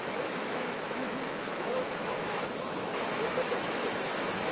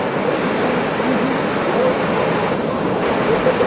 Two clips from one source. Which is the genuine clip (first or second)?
second